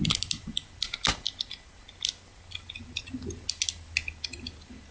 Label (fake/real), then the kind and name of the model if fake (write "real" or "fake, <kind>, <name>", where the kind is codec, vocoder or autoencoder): real